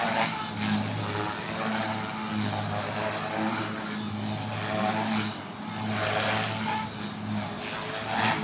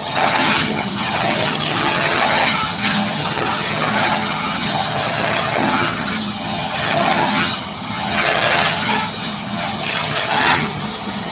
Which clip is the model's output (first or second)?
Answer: second